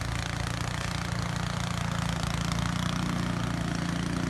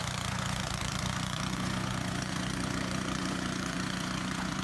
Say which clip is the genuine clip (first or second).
first